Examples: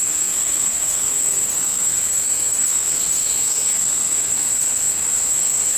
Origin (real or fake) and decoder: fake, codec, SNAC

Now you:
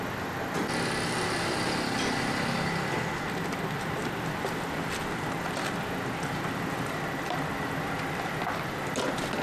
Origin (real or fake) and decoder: real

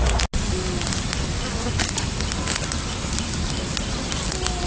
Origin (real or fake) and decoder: real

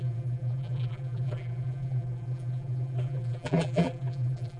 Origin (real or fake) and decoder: fake, vocoder, BigVGAN v2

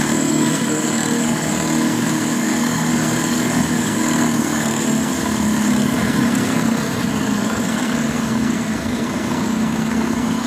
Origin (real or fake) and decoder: fake, codec, SNAC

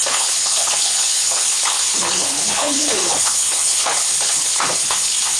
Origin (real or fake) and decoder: fake, codec, HILCodec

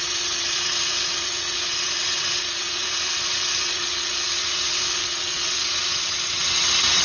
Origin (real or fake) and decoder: fake, vocoder, WaveNeXt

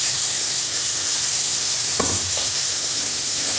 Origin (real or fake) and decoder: fake, codec, SNAC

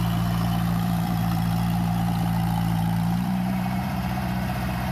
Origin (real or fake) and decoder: fake, vocoder, BigVGAN v2